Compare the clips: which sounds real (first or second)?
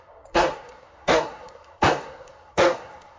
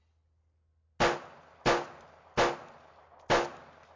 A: second